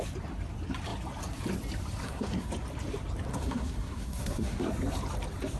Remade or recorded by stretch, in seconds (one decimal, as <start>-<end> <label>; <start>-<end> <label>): 0.0-2.0 recorded; 2.0-2.5 remade; 2.5-3.3 recorded; 3.3-4.7 remade; 4.7-5.6 recorded